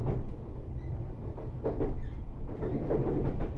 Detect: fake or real real